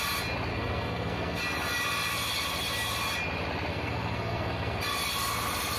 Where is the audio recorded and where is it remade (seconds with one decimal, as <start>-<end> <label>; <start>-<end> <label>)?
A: 0.0-0.5 recorded; 0.5-1.4 remade; 1.4-3.7 recorded; 3.7-4.8 remade; 4.8-5.8 recorded